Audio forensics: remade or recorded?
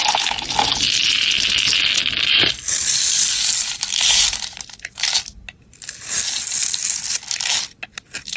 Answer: recorded